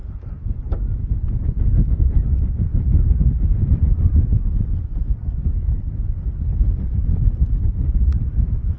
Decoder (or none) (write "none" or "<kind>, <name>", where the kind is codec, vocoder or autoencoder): none